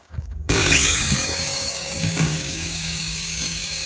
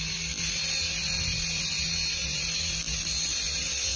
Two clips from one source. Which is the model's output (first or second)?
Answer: first